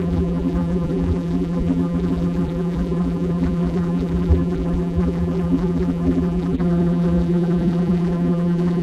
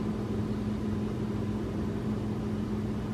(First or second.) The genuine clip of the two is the second